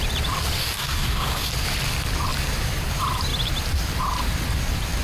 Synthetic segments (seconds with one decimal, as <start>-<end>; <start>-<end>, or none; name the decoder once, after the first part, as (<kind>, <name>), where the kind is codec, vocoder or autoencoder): 0.6-1.5 (codec, DAC)